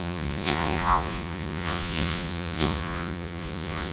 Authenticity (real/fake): fake